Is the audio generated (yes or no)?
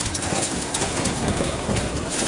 yes